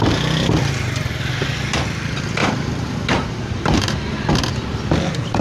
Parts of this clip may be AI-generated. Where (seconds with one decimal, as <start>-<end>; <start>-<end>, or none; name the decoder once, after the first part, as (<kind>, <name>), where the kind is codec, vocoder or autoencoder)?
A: 2.4-4.3 (vocoder, BigVGAN v2)